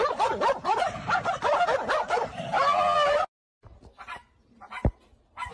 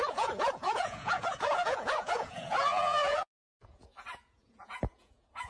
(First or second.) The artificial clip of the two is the second